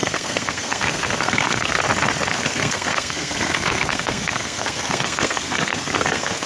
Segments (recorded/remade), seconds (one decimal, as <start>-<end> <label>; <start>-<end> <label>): 0.0-1.8 remade; 1.8-2.3 recorded; 2.3-6.5 remade